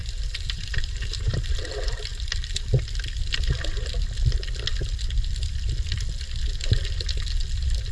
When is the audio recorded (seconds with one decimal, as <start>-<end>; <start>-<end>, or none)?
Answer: 1.5-7.9